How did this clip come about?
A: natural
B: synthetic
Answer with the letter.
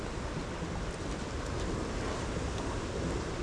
A